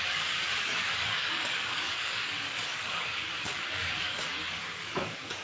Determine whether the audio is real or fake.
fake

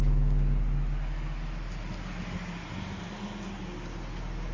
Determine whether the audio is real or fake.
real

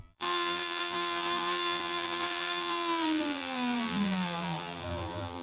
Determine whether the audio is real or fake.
fake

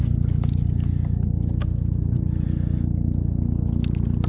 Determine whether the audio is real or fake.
real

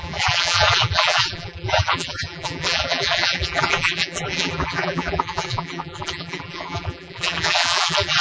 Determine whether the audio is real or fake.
fake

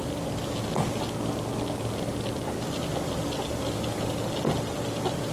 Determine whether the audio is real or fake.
real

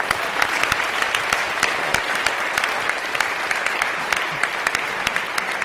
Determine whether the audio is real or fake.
real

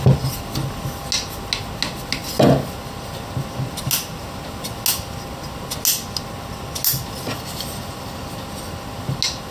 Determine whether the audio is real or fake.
real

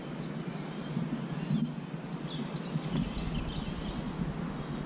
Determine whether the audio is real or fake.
real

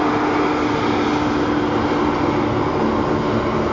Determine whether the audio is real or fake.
real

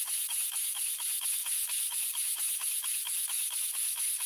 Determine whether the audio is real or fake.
fake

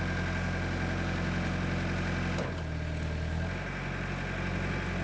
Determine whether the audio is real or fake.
real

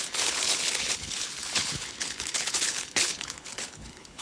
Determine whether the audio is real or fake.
fake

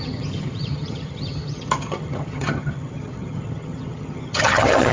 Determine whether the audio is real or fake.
fake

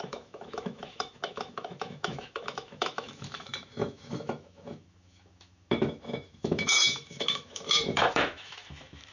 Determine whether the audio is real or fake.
fake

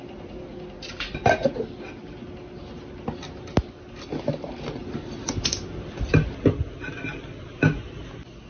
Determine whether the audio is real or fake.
real